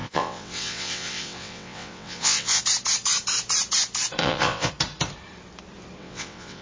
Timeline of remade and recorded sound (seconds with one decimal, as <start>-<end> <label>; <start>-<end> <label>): 0.0-2.6 remade; 2.6-4.2 recorded; 4.2-4.7 remade; 4.7-6.0 recorded; 6.0-6.6 remade